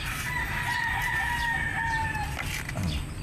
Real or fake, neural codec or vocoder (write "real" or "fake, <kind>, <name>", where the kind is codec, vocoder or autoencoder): real